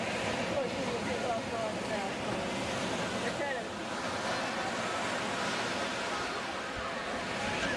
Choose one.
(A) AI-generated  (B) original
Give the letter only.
B